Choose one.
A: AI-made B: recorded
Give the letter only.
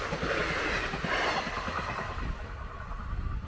B